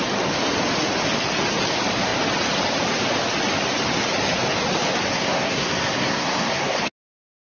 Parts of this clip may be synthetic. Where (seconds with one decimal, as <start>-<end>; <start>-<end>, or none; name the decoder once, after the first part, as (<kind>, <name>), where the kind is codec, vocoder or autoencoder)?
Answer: 5.1-6.9 (codec, SNAC)